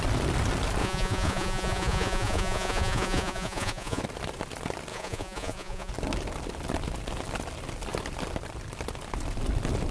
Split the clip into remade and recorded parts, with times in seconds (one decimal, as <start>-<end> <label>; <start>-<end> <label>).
0.0-0.8 recorded; 0.8-4.0 remade; 4.0-4.9 recorded; 4.9-5.9 remade; 5.9-9.9 recorded